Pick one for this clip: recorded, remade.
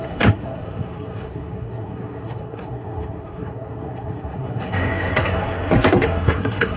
remade